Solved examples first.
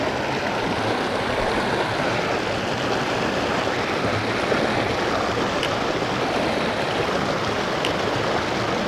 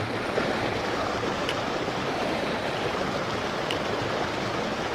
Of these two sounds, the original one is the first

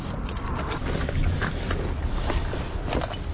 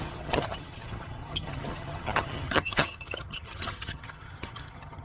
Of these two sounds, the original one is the first